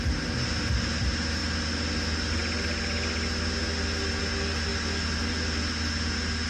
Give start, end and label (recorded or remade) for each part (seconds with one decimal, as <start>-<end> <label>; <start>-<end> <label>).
0.0-6.5 recorded